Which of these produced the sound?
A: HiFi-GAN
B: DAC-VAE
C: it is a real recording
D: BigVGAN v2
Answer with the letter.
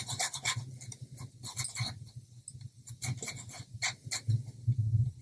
C